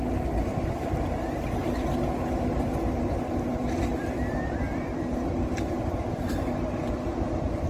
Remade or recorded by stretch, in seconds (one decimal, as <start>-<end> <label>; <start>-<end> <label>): 0.0-7.7 recorded